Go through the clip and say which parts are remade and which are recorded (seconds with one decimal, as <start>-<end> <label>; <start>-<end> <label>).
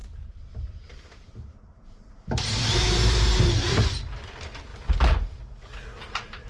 0.0-3.9 remade; 3.9-5.9 recorded; 5.9-6.5 remade